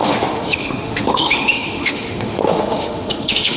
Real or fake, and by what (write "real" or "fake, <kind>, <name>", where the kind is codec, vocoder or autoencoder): fake, autoencoder, DAC-VAE